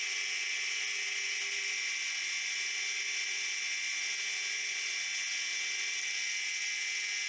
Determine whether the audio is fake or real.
real